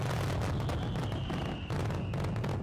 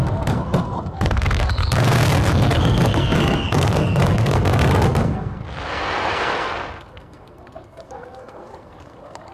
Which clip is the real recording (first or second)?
first